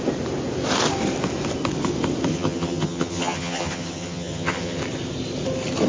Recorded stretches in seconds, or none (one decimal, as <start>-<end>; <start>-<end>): 0.0-2.3; 4.8-5.9